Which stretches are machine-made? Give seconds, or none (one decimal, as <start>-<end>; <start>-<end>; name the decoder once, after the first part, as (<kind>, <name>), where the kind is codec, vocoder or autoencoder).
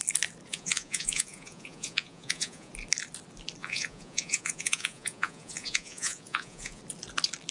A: 0.5-2.7 (vocoder, Vocos); 3.6-6.8